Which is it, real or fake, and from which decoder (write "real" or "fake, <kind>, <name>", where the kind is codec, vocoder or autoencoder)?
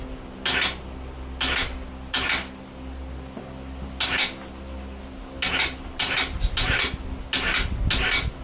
real